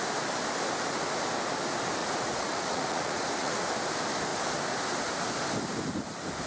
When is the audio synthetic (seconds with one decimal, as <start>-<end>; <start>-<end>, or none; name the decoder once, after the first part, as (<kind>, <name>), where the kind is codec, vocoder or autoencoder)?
2.0-3.7 (vocoder, Vocos)